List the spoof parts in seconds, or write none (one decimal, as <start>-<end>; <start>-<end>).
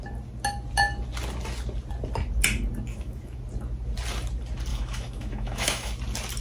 2.9-3.4; 4.7-5.9